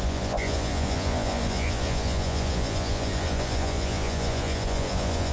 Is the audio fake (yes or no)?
yes